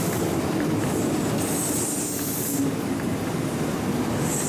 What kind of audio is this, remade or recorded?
recorded